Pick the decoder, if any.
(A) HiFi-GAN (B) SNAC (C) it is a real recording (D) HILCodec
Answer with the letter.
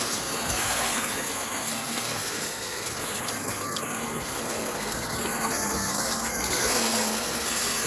B